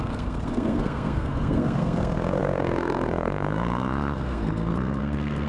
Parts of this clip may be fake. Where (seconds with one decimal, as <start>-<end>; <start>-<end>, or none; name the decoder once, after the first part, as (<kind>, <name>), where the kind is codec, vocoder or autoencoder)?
0.0-5.5 (codec, SNAC)